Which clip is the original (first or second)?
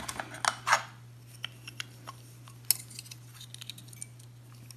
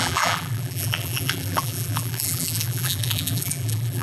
first